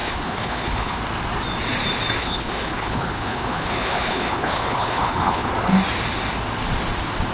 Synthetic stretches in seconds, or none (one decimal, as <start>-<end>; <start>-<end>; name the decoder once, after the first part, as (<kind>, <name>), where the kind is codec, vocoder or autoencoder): 0.0-1.0 (codec, HILCodec); 2.2-5.5